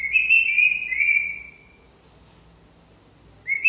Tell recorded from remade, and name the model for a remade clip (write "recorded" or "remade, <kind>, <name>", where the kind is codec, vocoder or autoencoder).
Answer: recorded